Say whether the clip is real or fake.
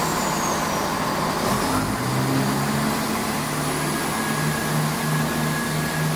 real